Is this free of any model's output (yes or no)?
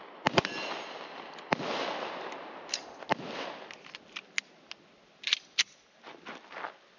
yes